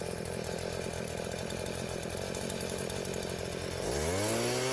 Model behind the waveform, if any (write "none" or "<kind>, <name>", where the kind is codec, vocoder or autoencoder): none